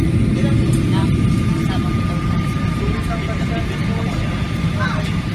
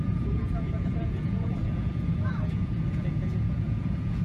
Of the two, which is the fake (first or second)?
second